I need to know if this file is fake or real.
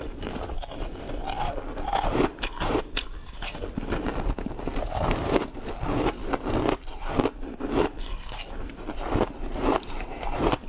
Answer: real